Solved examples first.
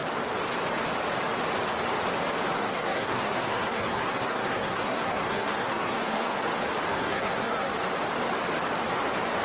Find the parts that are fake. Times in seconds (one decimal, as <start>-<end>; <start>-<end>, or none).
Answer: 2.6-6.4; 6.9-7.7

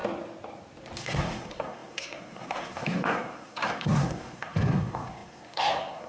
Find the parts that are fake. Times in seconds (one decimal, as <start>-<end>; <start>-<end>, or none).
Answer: 1.0-6.1

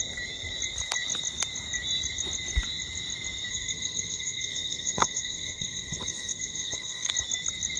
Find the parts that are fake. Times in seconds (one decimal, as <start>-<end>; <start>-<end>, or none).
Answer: 3.5-7.1

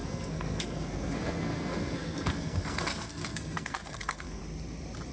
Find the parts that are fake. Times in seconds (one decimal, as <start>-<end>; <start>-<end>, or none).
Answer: 0.0-4.4

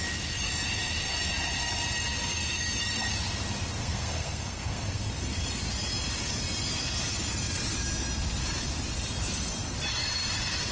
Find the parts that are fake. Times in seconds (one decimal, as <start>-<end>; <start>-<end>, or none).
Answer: 3.8-5.0